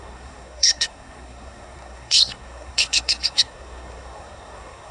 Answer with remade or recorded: remade